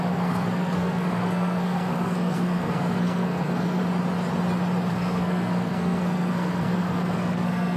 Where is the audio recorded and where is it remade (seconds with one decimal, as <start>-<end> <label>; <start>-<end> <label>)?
0.0-3.8 remade; 3.8-4.9 recorded; 4.9-7.8 remade